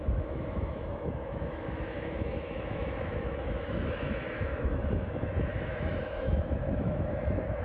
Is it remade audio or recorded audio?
remade